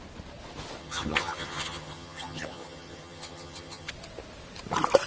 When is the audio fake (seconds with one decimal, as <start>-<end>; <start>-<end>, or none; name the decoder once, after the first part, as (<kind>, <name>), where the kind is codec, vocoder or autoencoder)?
0.8-3.9 (vocoder, HiFi-GAN)